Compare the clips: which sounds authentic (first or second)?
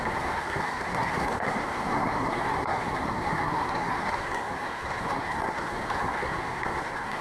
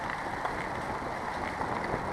second